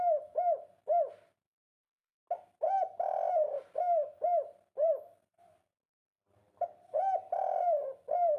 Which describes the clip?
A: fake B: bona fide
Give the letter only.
B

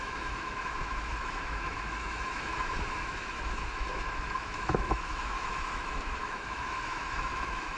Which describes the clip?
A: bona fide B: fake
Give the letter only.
B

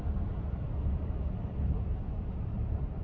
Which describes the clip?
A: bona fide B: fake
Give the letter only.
A